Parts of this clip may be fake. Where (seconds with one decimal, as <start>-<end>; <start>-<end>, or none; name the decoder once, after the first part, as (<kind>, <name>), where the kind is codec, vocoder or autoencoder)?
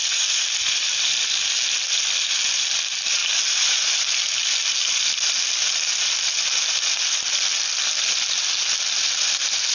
none